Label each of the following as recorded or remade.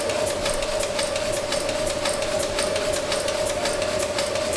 recorded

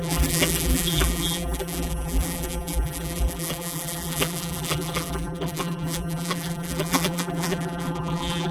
remade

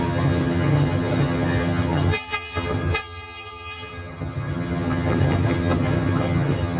remade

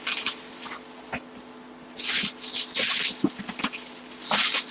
recorded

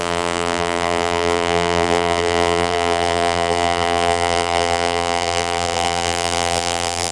remade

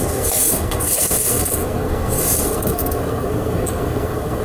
remade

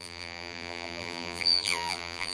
remade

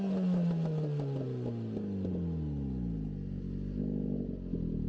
recorded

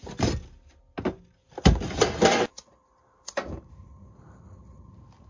recorded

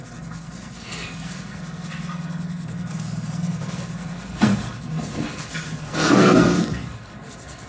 remade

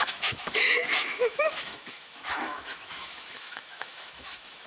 remade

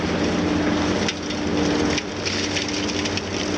recorded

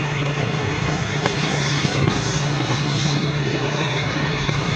remade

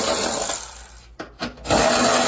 recorded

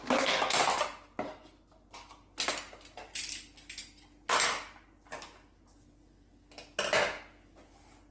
recorded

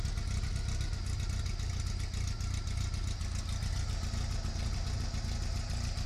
recorded